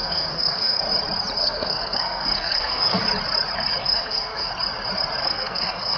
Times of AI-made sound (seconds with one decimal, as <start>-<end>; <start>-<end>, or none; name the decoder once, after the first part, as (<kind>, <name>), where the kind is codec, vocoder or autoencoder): 0.0-0.8 (codec, SNAC); 1.4-3.0; 3.8-4.5; 5.2-6.0